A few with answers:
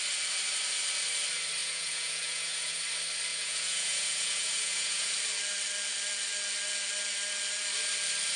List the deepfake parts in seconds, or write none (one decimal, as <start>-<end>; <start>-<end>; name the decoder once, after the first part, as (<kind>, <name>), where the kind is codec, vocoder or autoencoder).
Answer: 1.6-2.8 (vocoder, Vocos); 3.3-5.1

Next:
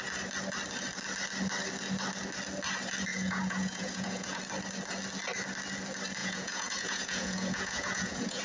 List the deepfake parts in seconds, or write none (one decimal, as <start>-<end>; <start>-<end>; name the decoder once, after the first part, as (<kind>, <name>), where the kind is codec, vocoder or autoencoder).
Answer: 3.1-4.4 (vocoder, Vocos); 6.2-8.4

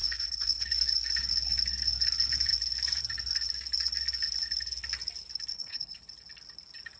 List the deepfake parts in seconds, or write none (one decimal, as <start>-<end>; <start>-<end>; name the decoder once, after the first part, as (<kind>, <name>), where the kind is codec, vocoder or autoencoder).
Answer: 0.0-0.7 (codec, HILCodec); 5.5-6.0

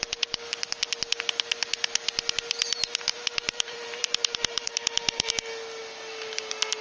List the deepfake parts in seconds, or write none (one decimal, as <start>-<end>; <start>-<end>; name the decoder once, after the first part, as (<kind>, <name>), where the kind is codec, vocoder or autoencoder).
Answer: 3.1-5.3 (vocoder, BigVGAN v2)

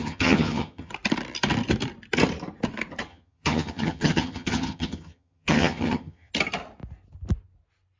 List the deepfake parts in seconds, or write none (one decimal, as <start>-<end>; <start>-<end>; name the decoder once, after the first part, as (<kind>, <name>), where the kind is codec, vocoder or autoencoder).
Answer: 0.0-0.9 (vocoder, HiFi-GAN); 3.1-6.3